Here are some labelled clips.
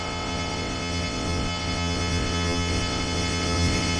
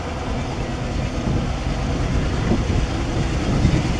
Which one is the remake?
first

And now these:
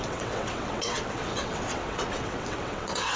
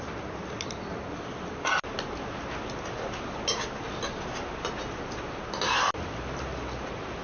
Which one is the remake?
first